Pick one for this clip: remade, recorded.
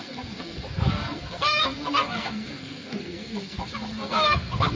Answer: remade